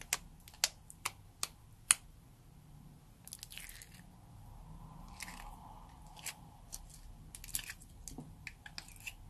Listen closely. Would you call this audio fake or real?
real